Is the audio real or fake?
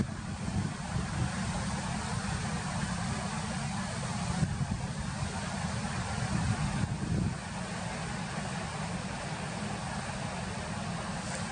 real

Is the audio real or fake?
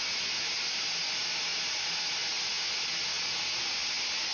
real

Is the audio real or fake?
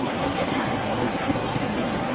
fake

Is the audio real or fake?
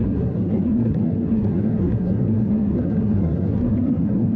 fake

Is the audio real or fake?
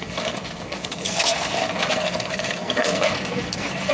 fake